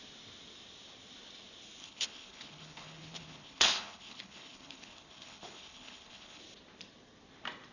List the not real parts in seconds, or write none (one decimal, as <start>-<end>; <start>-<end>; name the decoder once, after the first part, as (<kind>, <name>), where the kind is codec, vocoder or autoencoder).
1.8-6.4 (codec, HILCodec)